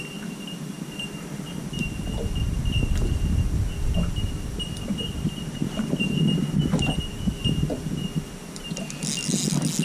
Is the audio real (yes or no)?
yes